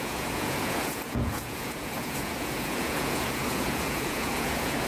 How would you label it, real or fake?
fake